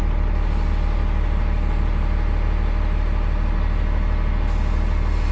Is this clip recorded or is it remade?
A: recorded